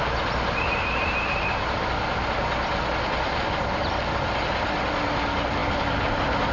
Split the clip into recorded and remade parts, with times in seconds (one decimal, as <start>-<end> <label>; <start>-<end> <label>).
0.0-6.5 recorded